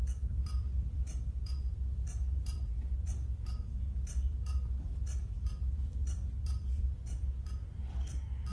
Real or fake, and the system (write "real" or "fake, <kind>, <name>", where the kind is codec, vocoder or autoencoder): fake, vocoder, BigVGAN v2